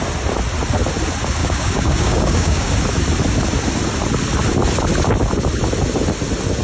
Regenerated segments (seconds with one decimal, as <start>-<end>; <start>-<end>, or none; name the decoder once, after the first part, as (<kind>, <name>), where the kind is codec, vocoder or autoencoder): 1.4-2.7 (codec, DAC)